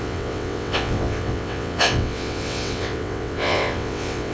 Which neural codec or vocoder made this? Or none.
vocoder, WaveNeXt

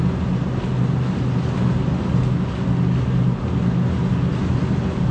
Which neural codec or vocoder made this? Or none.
none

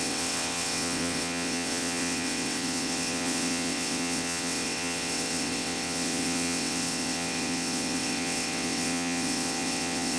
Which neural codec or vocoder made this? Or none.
vocoder, WaveNeXt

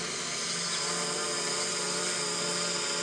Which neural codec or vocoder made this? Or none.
none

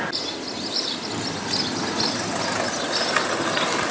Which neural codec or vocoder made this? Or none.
none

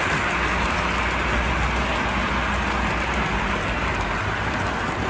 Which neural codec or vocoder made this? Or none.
none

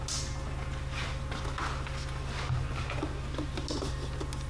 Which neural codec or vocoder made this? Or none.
none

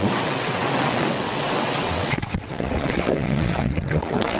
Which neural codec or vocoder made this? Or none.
vocoder, WaveNeXt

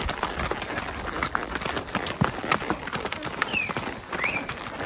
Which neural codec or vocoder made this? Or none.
none